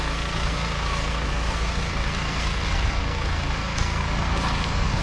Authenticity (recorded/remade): remade